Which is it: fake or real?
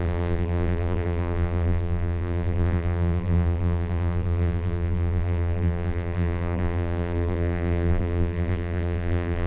fake